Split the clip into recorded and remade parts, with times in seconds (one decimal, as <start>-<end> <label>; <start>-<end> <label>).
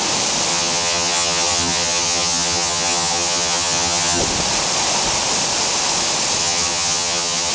0.0-0.5 recorded; 0.5-4.2 remade; 4.2-6.4 recorded; 6.4-7.5 remade